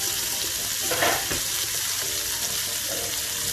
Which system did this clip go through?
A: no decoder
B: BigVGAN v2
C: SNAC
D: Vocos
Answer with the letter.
B